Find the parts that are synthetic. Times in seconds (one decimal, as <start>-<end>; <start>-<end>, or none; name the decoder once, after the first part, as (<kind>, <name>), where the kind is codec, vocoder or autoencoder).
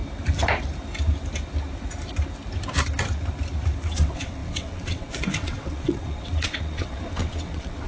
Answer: 3.8-7.9 (vocoder, WaveNeXt)